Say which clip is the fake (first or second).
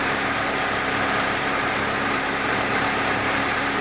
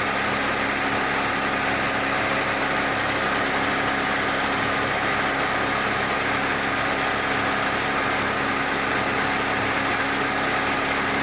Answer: first